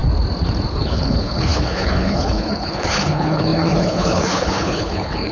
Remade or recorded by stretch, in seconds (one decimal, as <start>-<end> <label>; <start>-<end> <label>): 0.0-0.7 recorded; 0.7-5.3 remade